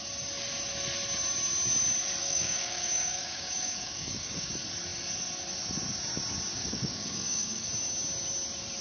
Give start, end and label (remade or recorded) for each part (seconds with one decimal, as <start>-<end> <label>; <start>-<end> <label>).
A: 0.0-2.2 recorded; 2.2-4.5 remade; 4.5-6.6 recorded; 6.6-7.7 remade; 7.7-8.8 recorded

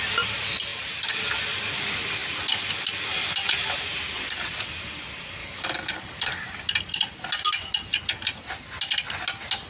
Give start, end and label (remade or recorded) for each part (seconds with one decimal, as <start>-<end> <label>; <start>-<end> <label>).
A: 0.0-5.4 recorded; 5.4-6.4 remade; 6.4-9.7 recorded

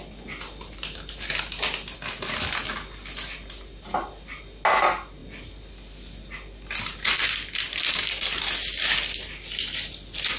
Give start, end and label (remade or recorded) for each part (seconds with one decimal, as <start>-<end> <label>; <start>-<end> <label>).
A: 0.0-10.4 recorded

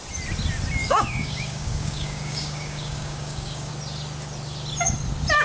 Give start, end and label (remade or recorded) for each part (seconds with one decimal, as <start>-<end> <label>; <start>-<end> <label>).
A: 0.0-0.8 recorded; 0.8-3.7 remade; 3.7-5.4 recorded